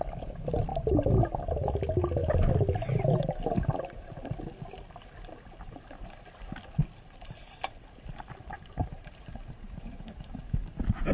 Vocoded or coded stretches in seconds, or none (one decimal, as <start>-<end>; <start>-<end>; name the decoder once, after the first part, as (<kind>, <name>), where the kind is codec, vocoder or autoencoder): 8.8-10.4 (vocoder, BigVGAN v2)